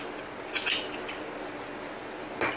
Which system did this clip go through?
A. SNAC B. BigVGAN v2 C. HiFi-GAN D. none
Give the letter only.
D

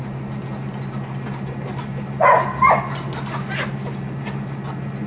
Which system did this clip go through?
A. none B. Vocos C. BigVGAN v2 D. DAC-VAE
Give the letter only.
A